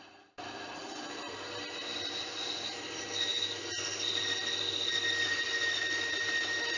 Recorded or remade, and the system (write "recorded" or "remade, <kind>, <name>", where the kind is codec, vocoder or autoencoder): recorded